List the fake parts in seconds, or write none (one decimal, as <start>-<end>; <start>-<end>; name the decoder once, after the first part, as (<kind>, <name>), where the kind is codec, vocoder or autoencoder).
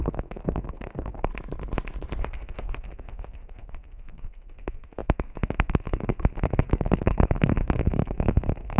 0.0-1.3 (codec, SNAC); 2.2-8.8